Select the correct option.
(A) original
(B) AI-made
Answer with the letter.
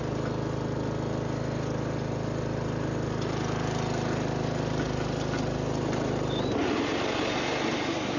A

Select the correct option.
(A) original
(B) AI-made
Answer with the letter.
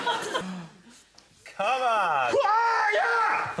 A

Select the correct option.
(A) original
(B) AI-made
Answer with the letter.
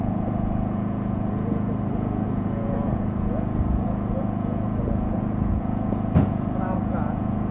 B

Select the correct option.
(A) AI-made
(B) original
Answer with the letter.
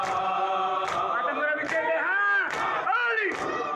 B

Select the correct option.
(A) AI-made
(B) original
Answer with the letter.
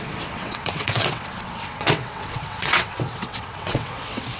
A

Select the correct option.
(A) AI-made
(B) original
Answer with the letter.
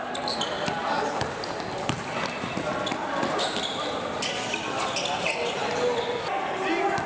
B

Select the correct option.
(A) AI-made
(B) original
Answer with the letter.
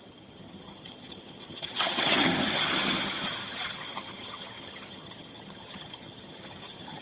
A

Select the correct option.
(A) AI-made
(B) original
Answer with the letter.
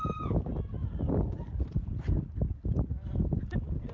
B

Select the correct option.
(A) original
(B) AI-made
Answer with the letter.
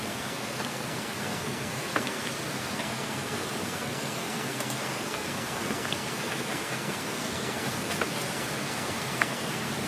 B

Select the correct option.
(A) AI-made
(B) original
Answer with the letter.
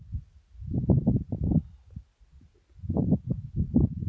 B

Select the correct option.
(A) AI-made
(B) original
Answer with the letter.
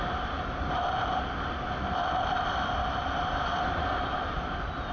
B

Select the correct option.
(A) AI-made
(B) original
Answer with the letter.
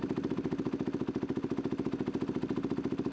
B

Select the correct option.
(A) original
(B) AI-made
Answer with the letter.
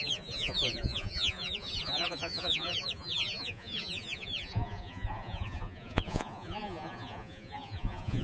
B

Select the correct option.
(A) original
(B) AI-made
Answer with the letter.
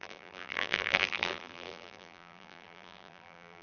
B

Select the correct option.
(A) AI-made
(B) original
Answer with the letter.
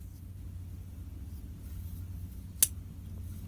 B